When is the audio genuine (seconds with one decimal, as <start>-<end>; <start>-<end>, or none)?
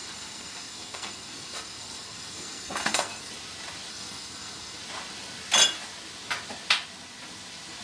3.3-3.9; 4.8-7.8